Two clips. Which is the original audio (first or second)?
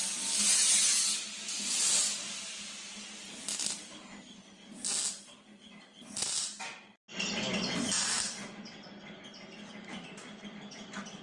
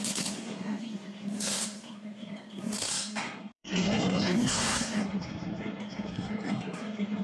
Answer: first